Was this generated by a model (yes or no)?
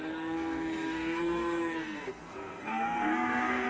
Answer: yes